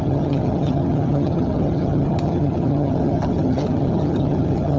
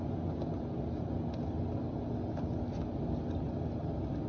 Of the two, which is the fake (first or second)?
first